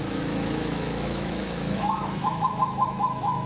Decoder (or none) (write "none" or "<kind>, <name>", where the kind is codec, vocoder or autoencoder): autoencoder, DAC-VAE